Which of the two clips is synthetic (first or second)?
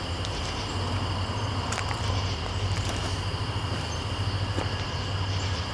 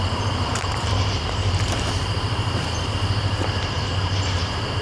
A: second